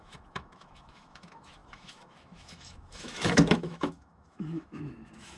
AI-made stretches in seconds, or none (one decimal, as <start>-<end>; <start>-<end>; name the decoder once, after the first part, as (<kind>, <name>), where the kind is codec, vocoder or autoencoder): 0.0-5.4 (autoencoder, DAC-VAE)